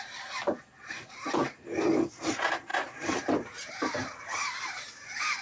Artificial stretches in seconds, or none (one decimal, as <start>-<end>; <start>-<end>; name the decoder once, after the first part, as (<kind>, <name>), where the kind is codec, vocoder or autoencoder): 0.0-1.4 (vocoder, BigVGAN v2); 2.3-5.4